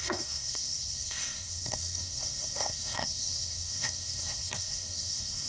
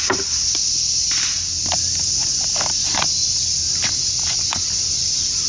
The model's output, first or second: first